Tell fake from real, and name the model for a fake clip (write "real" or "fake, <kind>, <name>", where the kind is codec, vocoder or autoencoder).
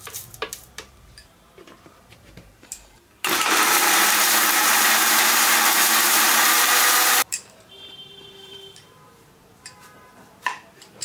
fake, vocoder, BigVGAN v2